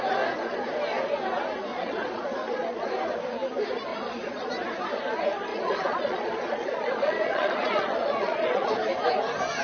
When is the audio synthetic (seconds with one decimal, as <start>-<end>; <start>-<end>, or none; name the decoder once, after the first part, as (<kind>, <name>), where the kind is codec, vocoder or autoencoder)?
1.7-2.9 (vocoder, Vocos); 3.9-4.5; 5.5-8.7